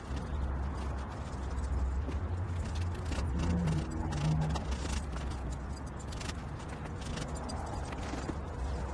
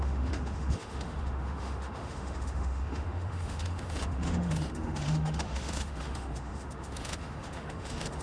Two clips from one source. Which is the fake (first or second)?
second